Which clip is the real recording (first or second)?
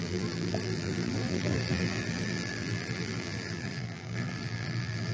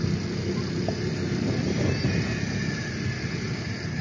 second